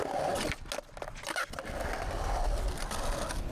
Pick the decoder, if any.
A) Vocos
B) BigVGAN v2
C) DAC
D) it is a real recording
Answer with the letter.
D